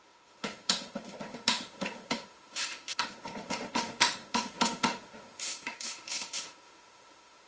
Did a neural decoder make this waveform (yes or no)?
yes